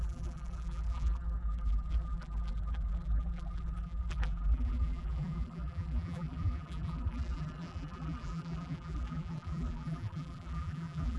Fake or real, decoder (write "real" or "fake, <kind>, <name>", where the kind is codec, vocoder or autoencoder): fake, vocoder, BigVGAN v2